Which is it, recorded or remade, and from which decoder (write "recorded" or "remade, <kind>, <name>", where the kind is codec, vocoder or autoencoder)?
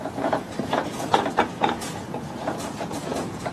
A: remade, vocoder, Vocos